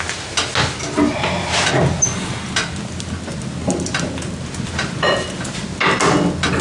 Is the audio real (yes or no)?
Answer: yes